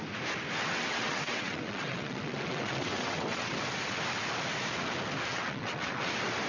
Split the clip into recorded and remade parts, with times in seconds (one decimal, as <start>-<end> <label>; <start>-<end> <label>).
0.0-0.6 recorded; 0.6-3.5 remade; 3.5-5.3 recorded; 5.3-6.1 remade; 6.1-6.5 recorded